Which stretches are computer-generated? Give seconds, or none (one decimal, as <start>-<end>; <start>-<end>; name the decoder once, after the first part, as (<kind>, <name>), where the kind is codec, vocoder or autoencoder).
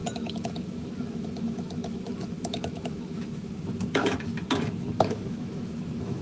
0.0-6.2 (autoencoder, DAC-VAE)